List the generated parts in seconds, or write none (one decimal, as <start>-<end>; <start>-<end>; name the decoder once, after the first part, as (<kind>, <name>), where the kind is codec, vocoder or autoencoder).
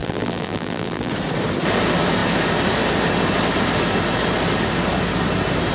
0.0-1.1 (vocoder, BigVGAN v2)